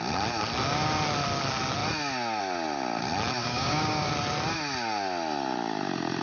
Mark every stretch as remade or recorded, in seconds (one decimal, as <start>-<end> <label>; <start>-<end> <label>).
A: 0.0-3.4 recorded; 3.4-4.1 remade; 4.1-6.2 recorded